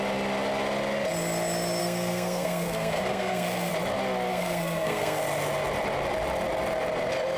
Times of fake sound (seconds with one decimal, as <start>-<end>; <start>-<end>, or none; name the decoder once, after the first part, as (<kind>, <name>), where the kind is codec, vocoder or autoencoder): 1.8-3.7 (codec, SNAC); 4.3-5.2